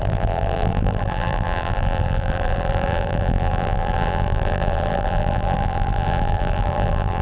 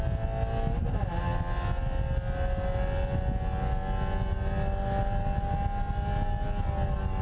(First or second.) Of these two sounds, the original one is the second